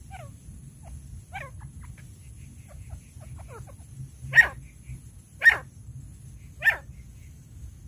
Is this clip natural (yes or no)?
yes